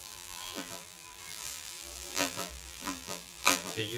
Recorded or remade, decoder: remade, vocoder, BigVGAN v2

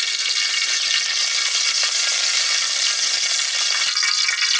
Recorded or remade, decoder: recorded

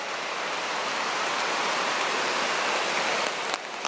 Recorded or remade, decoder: recorded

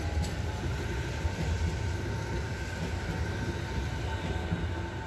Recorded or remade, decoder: recorded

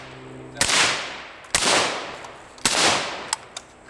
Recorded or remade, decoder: recorded